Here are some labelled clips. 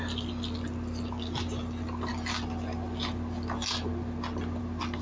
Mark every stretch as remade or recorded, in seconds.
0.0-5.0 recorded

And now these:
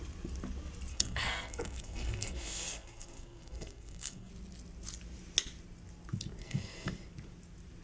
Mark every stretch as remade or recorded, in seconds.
0.0-0.9 recorded; 0.9-4.3 remade; 4.3-6.4 recorded; 6.4-6.9 remade; 6.9-7.8 recorded

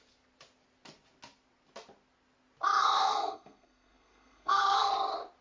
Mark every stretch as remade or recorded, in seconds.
0.0-2.8 recorded; 2.8-4.9 remade; 4.9-5.4 recorded

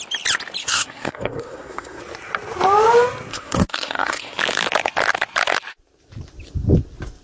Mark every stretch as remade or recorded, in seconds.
0.0-0.6 recorded; 0.6-2.0 remade; 2.0-3.3 recorded; 3.3-4.4 remade; 4.4-7.2 recorded

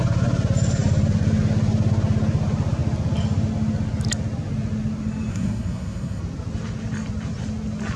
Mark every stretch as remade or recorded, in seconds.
0.0-5.3 recorded; 5.3-6.2 remade; 6.2-8.0 recorded

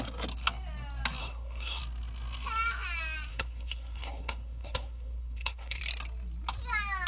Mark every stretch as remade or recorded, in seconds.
0.0-1.2 recorded; 1.2-1.8 remade; 1.8-3.3 recorded; 3.3-5.8 remade; 5.8-7.1 recorded

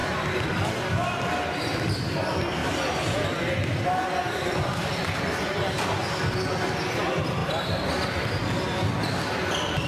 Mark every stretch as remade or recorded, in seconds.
0.0-9.9 recorded